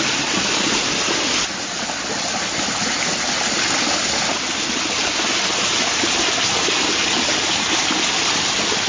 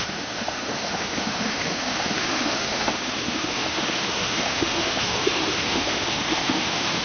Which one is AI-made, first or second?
second